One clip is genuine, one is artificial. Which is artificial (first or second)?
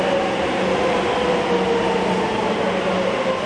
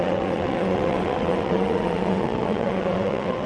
second